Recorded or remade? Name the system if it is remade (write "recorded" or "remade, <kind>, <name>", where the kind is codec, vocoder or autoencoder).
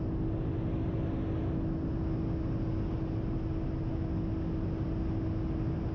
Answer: recorded